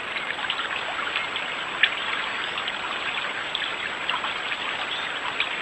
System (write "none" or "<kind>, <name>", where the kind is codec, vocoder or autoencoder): none